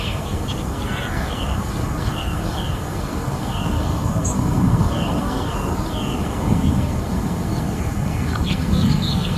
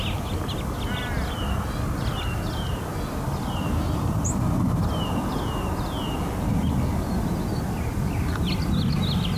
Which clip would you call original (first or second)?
second